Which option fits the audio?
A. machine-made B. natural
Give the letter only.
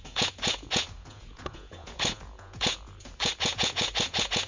A